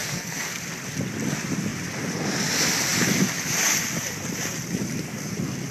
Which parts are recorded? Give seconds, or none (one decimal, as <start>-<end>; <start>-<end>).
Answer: 0.6-5.7